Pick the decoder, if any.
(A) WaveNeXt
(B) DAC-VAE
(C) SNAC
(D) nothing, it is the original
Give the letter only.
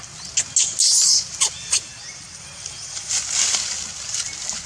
D